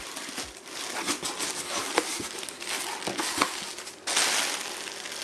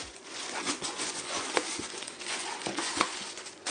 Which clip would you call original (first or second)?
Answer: first